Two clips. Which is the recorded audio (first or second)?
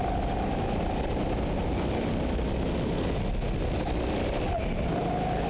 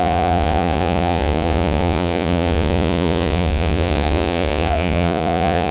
first